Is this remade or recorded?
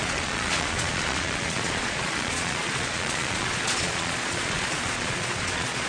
remade